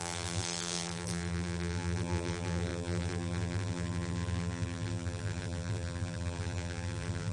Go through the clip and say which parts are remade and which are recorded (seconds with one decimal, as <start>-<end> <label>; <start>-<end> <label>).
0.0-7.3 remade